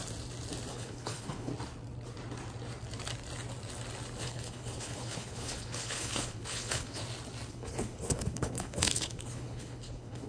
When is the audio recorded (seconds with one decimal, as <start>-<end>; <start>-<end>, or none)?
0.0-0.7; 1.5-4.2; 7.0-7.5